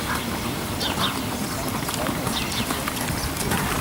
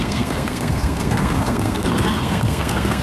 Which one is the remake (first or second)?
second